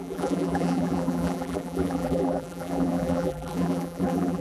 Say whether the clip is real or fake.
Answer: fake